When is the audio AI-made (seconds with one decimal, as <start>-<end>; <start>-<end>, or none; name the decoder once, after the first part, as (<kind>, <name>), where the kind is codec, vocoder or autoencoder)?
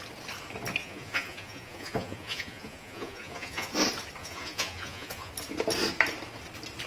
0.8-3.7 (vocoder, Vocos); 4.2-5.3